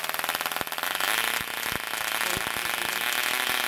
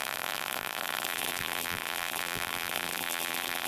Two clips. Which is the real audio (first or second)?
first